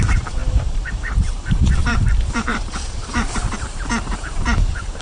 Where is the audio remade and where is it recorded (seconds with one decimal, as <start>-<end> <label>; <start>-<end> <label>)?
0.0-5.0 remade